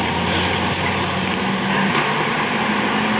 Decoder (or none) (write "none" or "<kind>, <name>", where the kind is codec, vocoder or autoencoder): none